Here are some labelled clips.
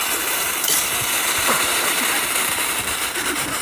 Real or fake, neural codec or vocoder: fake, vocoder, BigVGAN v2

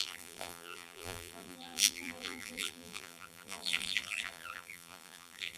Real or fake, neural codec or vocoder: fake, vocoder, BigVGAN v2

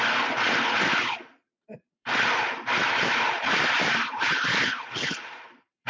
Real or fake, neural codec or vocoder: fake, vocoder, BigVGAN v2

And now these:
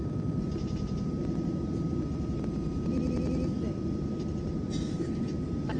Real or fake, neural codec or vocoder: fake, vocoder, BigVGAN v2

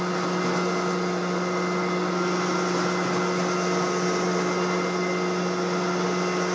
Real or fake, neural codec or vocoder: real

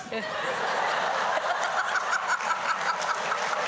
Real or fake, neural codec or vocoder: real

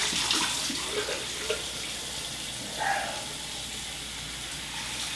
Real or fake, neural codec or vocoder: fake, vocoder, BigVGAN v2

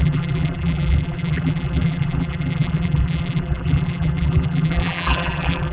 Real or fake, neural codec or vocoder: fake, vocoder, BigVGAN v2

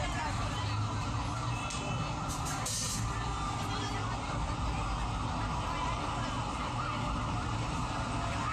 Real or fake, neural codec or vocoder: real